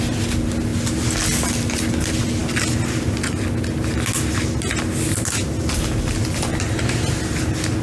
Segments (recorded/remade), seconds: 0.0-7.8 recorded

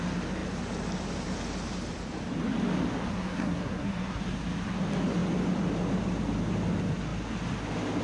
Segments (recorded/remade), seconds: 0.0-3.1 recorded; 3.1-4.2 remade; 4.2-8.0 recorded

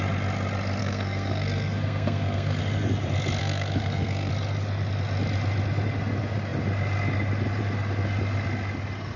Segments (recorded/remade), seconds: 0.0-0.8 recorded; 0.8-2.6 remade; 2.6-3.4 recorded; 3.4-4.3 remade; 4.3-9.2 recorded

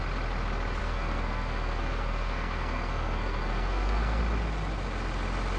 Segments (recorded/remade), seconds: 0.0-0.8 recorded; 0.8-4.2 remade; 4.2-5.6 recorded

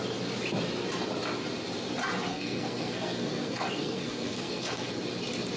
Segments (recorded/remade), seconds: 0.0-2.3 recorded; 2.3-4.9 remade; 4.9-5.6 recorded

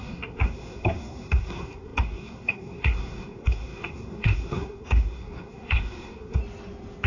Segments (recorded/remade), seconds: 0.0-6.4 remade; 6.4-7.1 recorded

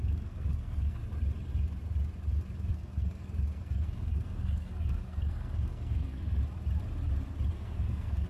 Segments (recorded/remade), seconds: 0.0-1.0 remade; 1.0-2.7 recorded; 2.7-6.4 remade; 6.4-7.5 recorded; 7.5-8.3 remade